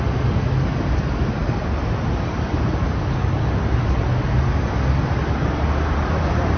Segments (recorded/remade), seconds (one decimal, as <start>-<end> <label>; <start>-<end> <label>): 0.0-6.6 recorded